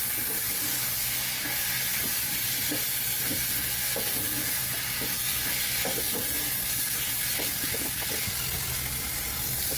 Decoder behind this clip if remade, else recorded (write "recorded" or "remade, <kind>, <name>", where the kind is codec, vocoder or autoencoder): recorded